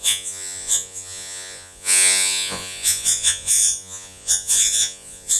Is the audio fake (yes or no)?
yes